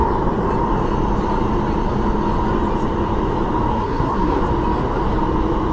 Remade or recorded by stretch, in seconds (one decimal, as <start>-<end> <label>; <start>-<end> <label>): 0.0-3.7 recorded; 3.7-4.4 remade; 4.4-5.7 recorded